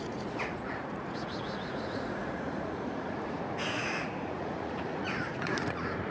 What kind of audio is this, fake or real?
fake